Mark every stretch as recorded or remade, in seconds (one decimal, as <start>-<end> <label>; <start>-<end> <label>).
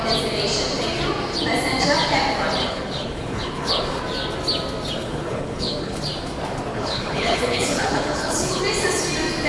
0.0-2.6 recorded; 2.6-4.0 remade; 4.0-5.0 recorded; 5.0-6.0 remade; 6.0-6.7 recorded; 6.7-8.6 remade; 8.6-9.5 recorded